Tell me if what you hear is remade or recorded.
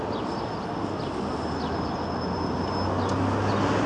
recorded